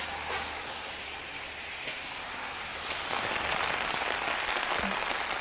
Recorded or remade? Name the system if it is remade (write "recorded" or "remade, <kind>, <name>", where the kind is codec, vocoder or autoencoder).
recorded